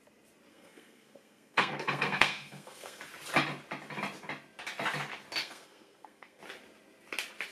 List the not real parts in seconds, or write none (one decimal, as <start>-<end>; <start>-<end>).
0.5-3.0; 5.4-6.4